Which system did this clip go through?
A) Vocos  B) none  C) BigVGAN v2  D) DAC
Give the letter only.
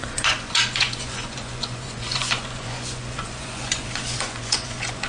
A